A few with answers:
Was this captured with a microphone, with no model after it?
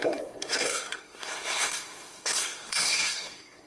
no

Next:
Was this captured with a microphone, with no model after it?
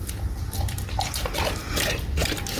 yes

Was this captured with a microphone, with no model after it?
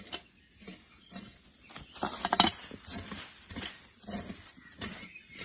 yes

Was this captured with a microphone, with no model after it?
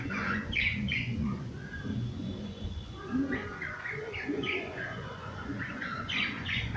no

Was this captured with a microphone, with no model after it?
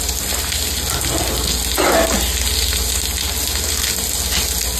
yes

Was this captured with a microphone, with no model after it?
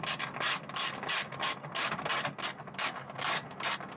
yes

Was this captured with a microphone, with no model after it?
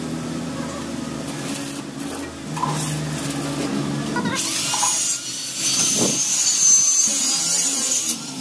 yes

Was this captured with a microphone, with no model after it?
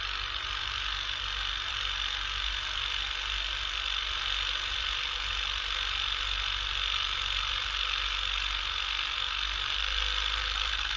yes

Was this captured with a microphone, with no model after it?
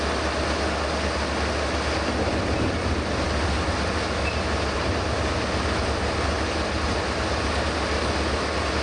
yes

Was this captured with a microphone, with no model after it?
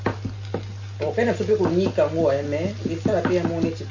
yes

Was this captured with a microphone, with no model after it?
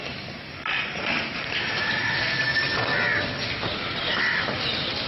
yes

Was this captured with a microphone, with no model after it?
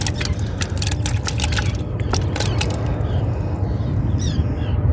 yes